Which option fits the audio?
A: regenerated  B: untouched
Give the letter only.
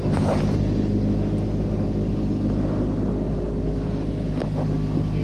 B